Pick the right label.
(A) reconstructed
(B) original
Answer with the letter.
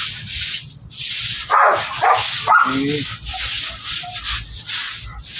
B